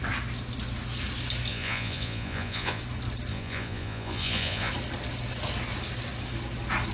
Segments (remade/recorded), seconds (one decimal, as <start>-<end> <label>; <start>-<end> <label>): 0.0-1.5 recorded; 1.5-2.8 remade; 2.8-3.3 recorded; 3.3-4.7 remade; 4.7-6.9 recorded